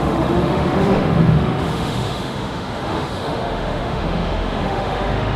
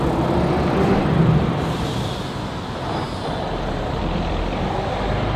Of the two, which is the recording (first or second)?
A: second